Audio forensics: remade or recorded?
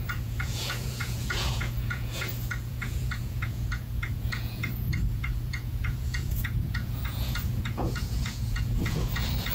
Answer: remade